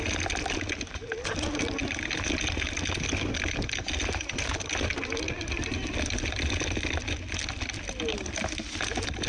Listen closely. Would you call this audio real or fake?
real